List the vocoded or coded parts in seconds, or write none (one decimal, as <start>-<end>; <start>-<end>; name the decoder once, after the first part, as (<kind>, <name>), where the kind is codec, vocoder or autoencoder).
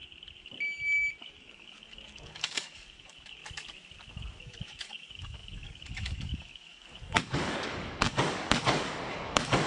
1.2-3.4 (codec, DAC); 4.4-9.7